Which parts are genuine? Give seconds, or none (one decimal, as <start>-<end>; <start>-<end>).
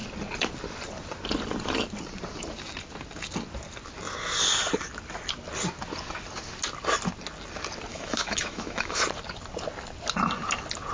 0.0-7.9; 9.0-10.9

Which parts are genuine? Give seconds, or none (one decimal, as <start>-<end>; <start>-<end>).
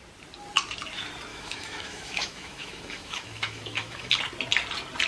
0.0-1.3; 4.2-5.1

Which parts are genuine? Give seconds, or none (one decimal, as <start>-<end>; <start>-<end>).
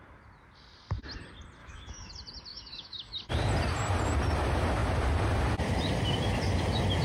0.0-1.6; 2.1-2.5; 3.2-7.0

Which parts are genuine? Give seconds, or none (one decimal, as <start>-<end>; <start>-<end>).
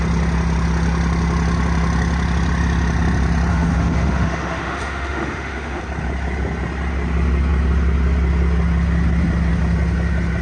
0.0-3.5; 5.8-10.4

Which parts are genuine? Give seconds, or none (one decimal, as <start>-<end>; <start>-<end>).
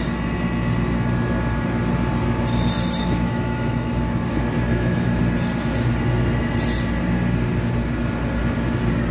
0.0-3.0; 3.9-4.7; 5.2-9.1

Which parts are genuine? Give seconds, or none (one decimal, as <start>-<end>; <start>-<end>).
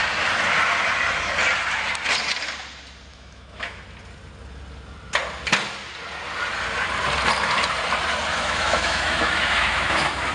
0.0-3.1; 3.8-8.3